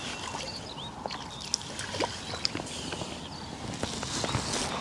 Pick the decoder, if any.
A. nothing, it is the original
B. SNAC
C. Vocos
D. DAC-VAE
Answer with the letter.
A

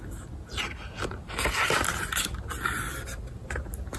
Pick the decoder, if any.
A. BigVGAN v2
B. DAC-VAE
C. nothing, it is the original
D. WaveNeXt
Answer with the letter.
C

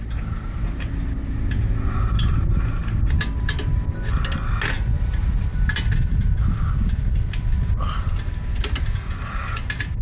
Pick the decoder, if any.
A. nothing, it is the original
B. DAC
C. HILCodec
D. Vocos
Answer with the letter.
A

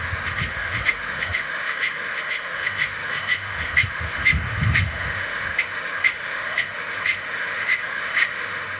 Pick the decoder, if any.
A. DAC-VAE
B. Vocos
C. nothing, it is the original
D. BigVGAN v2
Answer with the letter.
A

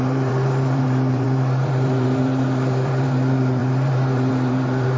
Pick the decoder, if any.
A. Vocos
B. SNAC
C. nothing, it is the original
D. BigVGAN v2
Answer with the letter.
D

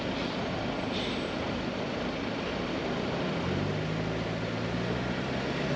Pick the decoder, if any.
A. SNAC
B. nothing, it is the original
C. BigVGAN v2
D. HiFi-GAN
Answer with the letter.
B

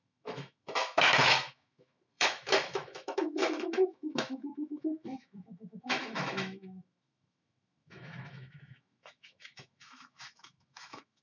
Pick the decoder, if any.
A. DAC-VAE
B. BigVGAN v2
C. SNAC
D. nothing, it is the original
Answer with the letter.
A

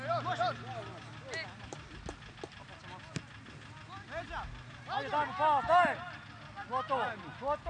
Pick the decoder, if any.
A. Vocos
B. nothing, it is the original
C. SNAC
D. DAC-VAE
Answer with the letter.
B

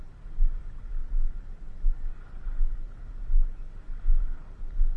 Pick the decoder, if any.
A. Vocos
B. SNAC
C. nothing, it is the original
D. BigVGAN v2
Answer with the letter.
C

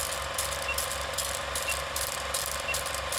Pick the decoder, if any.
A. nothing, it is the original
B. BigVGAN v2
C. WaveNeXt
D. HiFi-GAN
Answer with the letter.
A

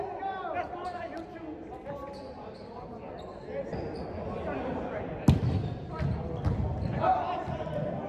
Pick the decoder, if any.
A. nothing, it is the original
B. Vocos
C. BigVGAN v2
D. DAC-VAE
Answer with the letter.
A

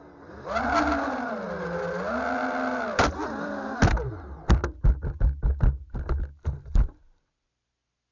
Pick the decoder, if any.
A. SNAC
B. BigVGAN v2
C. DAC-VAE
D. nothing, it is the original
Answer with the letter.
D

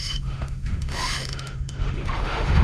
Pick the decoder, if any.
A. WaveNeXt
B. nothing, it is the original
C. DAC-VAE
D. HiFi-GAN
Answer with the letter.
C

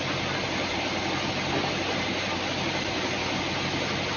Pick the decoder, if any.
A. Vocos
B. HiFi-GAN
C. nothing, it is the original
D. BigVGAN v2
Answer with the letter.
C